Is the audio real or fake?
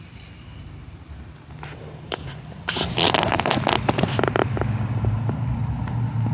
real